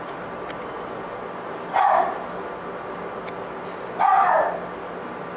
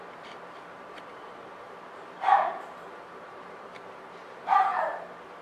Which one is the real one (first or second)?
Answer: first